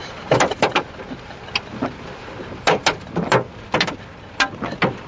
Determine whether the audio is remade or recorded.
recorded